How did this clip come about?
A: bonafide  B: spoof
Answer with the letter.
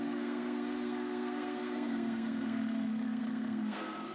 B